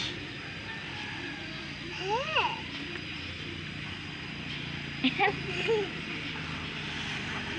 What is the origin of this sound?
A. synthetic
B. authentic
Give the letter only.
B